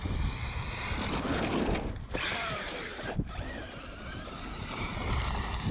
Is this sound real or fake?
fake